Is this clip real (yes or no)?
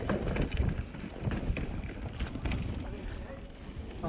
yes